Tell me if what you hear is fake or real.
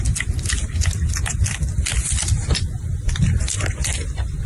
real